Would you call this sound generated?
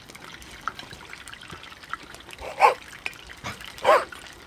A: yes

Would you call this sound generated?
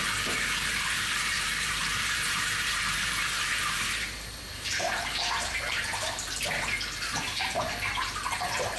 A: yes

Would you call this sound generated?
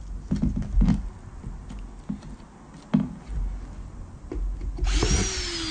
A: no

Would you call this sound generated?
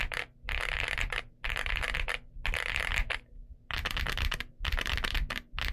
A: no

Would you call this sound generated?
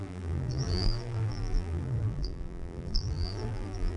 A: yes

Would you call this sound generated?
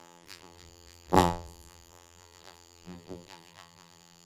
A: yes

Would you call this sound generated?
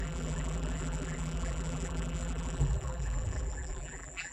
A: yes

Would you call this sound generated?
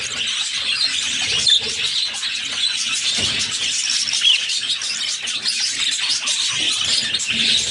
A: no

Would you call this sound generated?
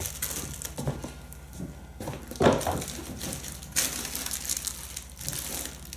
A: no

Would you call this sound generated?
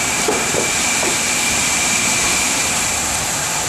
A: yes